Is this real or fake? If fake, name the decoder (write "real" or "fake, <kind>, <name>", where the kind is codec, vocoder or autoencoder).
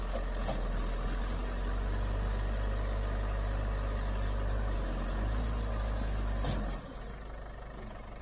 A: real